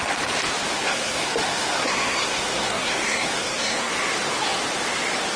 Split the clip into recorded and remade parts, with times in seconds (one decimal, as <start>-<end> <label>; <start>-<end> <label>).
0.0-0.7 recorded; 0.7-3.9 remade; 3.9-5.4 recorded

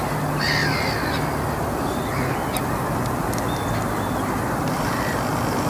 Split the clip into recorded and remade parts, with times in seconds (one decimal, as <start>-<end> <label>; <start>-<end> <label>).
0.0-5.7 recorded

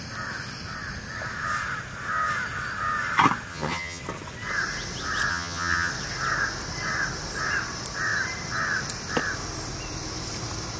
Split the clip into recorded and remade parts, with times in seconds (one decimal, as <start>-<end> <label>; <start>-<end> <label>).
0.0-3.5 recorded; 3.5-4.0 remade; 4.0-5.3 recorded; 5.3-5.9 remade; 5.9-10.8 recorded

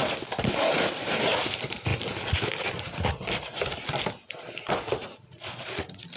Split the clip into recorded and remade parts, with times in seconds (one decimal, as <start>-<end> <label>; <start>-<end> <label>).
0.0-6.2 recorded

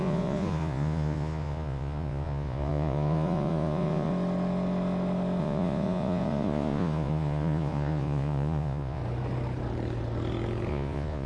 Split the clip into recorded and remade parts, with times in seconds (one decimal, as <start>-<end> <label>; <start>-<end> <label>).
0.0-4.1 remade; 4.1-5.4 recorded; 5.4-9.0 remade; 9.0-10.7 recorded; 10.7-11.3 remade

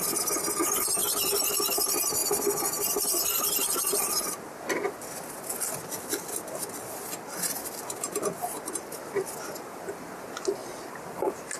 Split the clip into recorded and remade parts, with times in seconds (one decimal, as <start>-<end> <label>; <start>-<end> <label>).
0.0-2.2 recorded; 2.2-4.3 remade; 4.3-11.6 recorded

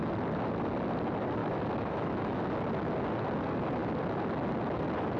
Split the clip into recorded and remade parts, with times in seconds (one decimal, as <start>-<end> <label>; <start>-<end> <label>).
0.0-1.4 recorded; 1.4-2.5 remade; 2.5-5.2 recorded